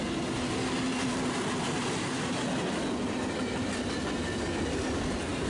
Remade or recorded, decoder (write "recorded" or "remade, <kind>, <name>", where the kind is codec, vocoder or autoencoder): recorded